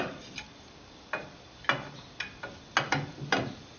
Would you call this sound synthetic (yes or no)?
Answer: no